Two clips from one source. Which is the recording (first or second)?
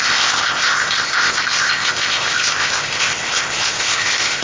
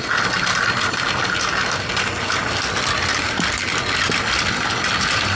second